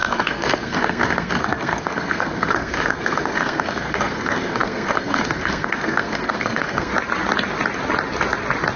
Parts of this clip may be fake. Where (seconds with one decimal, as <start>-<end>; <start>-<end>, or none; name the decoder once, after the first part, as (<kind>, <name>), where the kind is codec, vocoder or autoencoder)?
0.0-6.9 (codec, SNAC)